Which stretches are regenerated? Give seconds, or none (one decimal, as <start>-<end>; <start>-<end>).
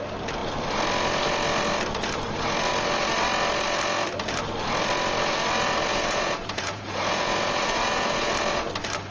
5.9-8.3